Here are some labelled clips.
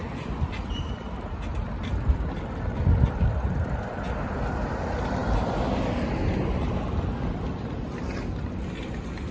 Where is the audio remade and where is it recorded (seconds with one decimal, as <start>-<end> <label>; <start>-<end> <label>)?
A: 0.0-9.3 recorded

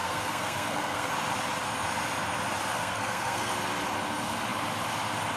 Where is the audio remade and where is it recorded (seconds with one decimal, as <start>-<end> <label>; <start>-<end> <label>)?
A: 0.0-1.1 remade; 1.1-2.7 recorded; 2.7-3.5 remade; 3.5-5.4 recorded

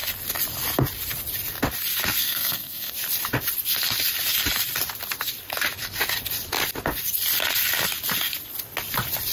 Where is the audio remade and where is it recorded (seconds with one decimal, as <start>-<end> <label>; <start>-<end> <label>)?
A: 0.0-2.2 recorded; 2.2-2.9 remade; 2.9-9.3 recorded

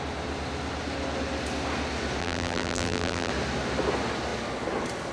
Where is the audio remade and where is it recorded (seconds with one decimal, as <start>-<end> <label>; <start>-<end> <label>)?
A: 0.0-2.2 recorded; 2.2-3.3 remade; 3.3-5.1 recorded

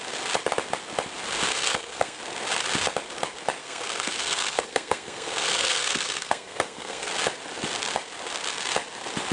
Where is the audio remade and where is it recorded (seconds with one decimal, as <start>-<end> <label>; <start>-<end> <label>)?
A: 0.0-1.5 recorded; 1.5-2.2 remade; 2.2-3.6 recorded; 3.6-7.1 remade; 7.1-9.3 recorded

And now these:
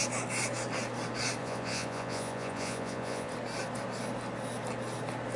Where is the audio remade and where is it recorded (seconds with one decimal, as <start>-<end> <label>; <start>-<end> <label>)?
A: 0.0-1.4 recorded; 1.4-3.3 remade; 3.3-5.4 recorded

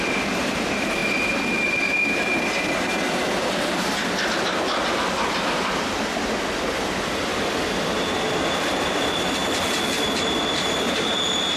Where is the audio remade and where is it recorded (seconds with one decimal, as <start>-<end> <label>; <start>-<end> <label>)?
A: 0.0-7.3 remade; 7.3-7.8 recorded; 7.8-9.4 remade; 9.4-10.2 recorded; 10.2-11.6 remade